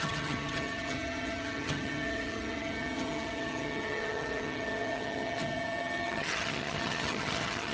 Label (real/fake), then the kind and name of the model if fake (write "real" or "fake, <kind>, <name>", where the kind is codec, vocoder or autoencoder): fake, vocoder, HiFi-GAN